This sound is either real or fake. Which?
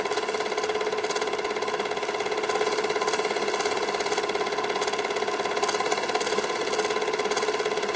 real